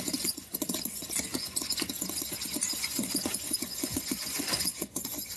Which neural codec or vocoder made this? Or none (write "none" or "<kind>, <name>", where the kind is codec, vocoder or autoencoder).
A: vocoder, Vocos